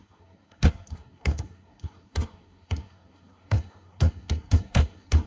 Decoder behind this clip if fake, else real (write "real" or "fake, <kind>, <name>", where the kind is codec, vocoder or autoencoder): fake, codec, SNAC